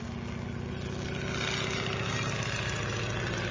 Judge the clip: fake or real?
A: real